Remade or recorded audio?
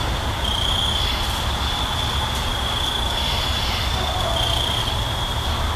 recorded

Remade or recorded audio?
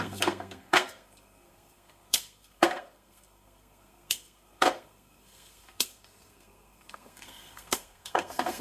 remade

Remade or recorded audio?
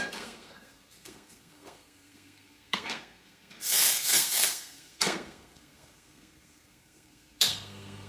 remade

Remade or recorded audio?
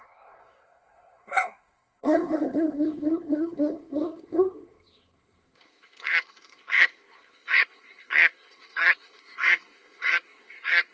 remade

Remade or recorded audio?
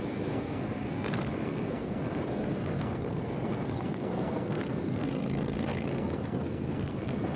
remade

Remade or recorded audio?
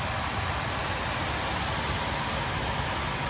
recorded